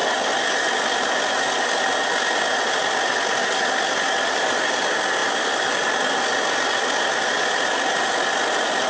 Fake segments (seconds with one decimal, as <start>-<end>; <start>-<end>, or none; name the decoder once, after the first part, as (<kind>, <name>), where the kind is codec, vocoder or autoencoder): none